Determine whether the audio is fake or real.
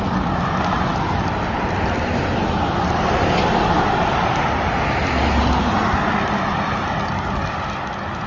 real